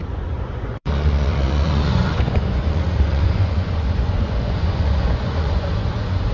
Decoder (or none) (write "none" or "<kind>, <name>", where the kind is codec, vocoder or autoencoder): vocoder, Vocos